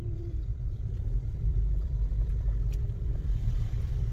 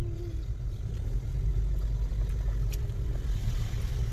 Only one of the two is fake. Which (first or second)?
first